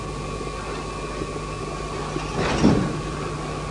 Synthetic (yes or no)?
no